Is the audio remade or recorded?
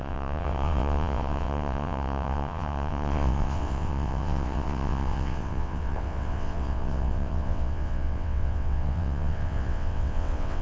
remade